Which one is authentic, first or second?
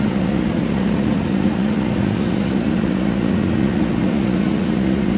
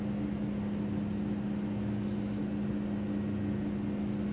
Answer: second